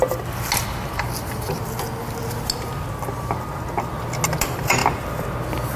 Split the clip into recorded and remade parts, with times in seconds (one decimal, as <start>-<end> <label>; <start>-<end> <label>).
0.0-5.8 recorded